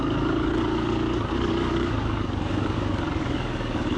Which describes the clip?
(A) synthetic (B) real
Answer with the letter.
A